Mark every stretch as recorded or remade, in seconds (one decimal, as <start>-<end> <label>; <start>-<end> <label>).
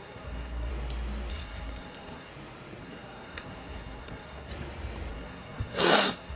0.0-0.7 remade; 0.7-1.3 recorded; 1.3-2.3 remade; 2.3-2.8 recorded; 2.8-4.5 remade; 4.5-5.1 recorded; 5.1-6.4 remade